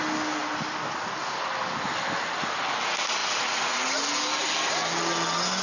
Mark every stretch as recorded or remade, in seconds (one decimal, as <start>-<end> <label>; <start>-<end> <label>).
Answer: 0.0-5.6 recorded